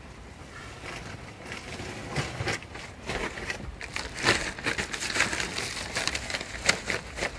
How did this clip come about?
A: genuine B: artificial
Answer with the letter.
B